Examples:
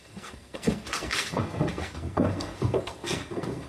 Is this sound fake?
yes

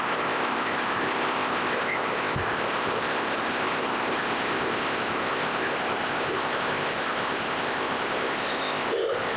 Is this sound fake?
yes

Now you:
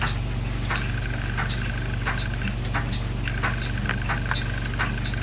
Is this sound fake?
no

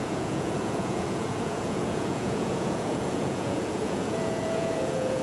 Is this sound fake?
yes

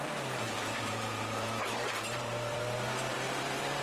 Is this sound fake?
yes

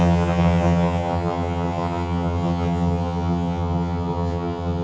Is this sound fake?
yes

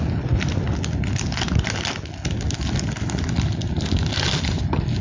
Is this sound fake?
no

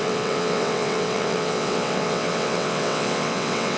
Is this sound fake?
yes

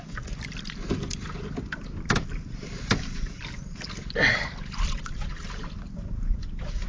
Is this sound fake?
no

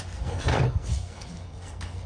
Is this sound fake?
yes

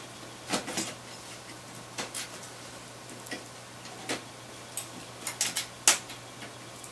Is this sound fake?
no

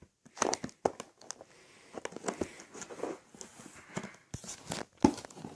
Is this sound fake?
no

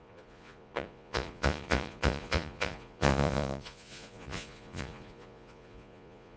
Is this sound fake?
yes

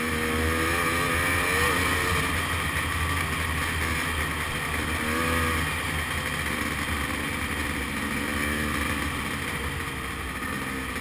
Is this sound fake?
no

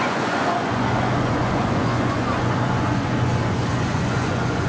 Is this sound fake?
yes